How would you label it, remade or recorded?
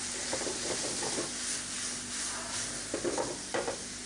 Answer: recorded